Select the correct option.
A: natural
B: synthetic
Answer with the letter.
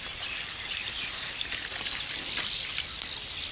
A